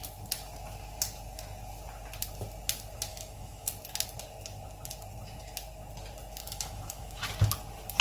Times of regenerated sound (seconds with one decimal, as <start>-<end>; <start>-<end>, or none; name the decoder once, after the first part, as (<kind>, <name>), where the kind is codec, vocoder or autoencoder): 3.1-3.7 (autoencoder, DAC-VAE); 6.4-7.2